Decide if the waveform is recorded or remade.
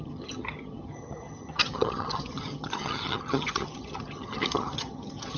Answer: remade